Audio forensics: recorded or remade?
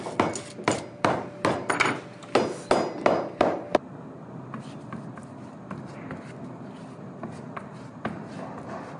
recorded